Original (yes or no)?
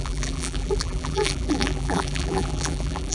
no